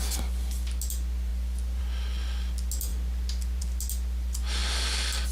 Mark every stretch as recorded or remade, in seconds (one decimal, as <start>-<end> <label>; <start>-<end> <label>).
0.0-5.3 recorded